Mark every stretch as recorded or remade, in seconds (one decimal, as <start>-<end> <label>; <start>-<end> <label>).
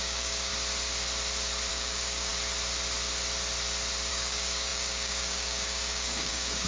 0.0-0.5 remade; 0.5-1.7 recorded; 1.7-2.3 remade; 2.3-4.1 recorded; 4.1-6.7 remade